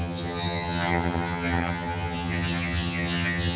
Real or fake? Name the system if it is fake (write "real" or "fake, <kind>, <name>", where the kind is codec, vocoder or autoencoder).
fake, vocoder, HiFi-GAN